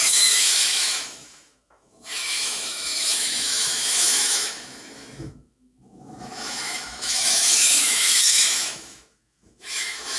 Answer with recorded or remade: remade